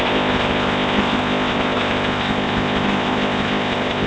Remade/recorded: remade